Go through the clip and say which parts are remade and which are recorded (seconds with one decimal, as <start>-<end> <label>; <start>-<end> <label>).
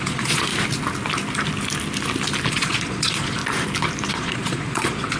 0.0-0.5 remade; 0.5-2.5 recorded; 2.5-3.4 remade; 3.4-4.1 recorded; 4.1-5.2 remade